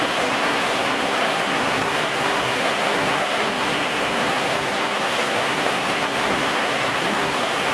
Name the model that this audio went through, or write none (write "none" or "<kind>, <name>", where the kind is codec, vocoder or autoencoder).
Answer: codec, SNAC